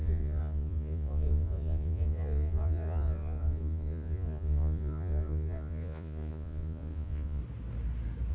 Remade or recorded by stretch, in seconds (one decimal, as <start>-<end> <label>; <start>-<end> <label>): 0.0-7.4 remade; 7.4-8.3 recorded